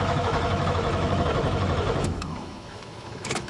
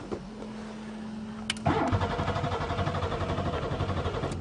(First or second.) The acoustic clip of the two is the second